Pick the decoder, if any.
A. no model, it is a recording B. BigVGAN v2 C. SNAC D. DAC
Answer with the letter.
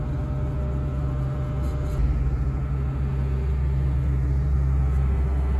A